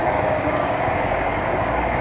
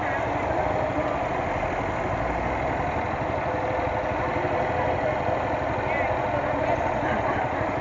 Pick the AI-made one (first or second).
first